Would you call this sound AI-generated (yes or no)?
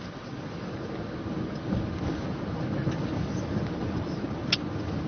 no